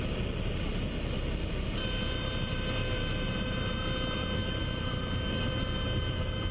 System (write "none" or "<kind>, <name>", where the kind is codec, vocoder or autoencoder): vocoder, BigVGAN v2